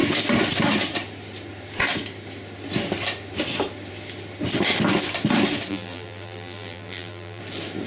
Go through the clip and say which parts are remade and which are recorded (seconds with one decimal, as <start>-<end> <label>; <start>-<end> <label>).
0.0-5.7 recorded; 5.7-7.4 remade; 7.4-7.9 recorded